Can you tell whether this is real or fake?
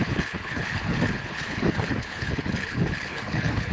fake